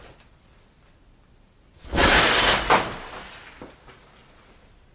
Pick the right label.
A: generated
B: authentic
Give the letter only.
B